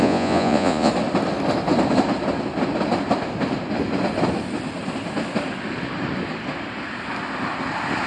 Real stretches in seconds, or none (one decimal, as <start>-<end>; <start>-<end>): 0.9-8.1